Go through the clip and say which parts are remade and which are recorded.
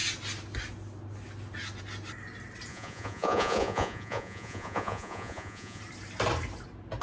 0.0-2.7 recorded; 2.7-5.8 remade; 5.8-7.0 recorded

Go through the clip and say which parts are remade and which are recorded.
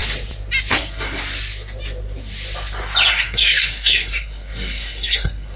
0.0-0.7 recorded; 0.7-1.2 remade; 1.2-3.1 recorded; 3.1-5.6 remade